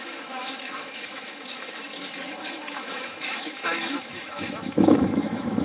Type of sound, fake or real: fake